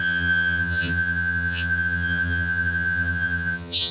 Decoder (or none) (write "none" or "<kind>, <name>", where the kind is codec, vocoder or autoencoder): vocoder, HiFi-GAN